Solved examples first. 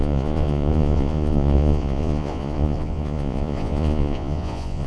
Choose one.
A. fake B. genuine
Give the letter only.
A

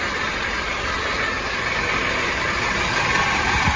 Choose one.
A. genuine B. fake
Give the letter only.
A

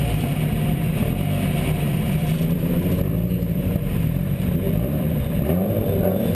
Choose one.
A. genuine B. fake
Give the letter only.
B